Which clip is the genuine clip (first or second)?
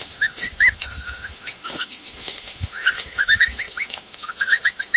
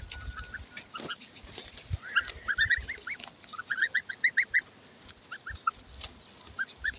second